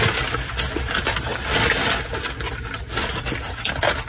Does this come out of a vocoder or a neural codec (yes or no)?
no